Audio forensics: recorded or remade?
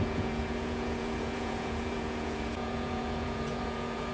remade